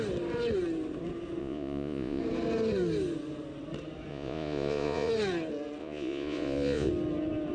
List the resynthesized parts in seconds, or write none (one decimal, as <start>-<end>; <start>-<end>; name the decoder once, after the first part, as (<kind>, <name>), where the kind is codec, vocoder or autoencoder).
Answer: 1.4-2.2 (vocoder, Vocos); 4.1-5.1; 5.8-6.9